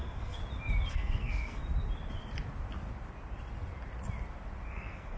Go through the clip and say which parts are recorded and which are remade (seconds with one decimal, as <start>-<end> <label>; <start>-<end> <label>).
0.0-0.4 remade; 0.4-0.9 recorded; 0.9-1.6 remade; 1.6-4.7 recorded; 4.7-5.2 remade